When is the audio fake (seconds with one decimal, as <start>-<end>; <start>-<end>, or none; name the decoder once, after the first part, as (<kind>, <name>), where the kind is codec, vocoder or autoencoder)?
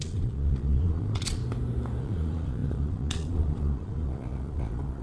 0.0-1.4 (vocoder, Vocos); 2.0-5.0